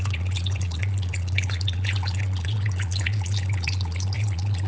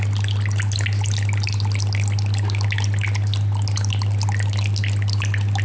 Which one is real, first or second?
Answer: second